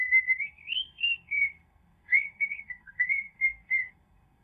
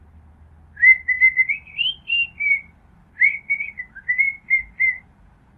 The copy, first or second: first